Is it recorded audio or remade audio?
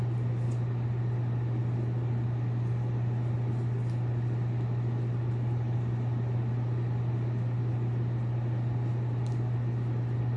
recorded